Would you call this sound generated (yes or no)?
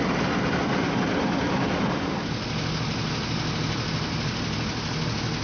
no